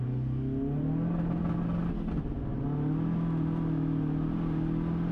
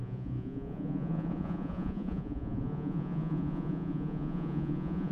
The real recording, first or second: first